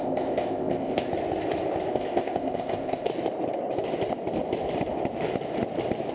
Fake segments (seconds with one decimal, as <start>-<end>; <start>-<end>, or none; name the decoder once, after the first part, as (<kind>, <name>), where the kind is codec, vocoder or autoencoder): 0.0-1.1 (codec, ZipCodec); 1.9-3.1